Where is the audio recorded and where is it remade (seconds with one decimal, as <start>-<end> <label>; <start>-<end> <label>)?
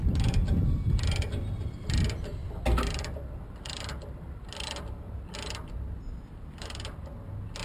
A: 0.0-7.6 recorded